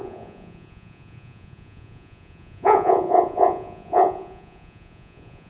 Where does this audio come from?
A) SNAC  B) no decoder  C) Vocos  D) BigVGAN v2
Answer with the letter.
C